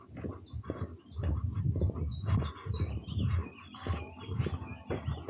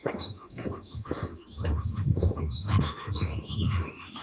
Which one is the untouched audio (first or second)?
first